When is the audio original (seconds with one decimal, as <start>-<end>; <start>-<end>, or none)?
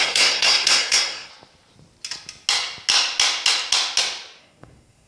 1.3-4.4